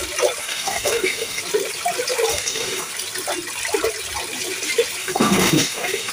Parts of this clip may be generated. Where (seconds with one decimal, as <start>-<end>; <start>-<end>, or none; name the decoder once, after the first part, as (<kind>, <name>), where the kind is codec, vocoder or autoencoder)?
0.4-1.4 (codec, DAC); 2.3-2.9; 5.0-6.1